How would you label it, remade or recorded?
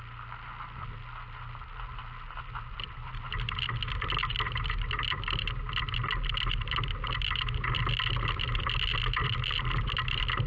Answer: recorded